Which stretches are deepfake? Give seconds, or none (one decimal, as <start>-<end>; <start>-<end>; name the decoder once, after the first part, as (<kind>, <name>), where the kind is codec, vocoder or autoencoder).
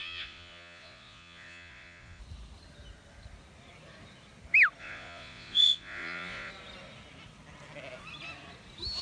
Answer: 0.0-2.2 (vocoder, Vocos); 4.8-6.5